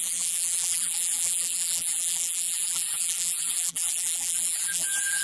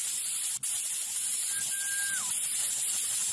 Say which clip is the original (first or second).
second